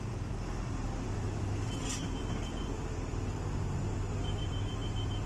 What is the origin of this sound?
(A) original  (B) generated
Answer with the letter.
B